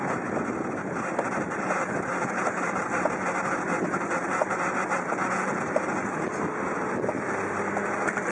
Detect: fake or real real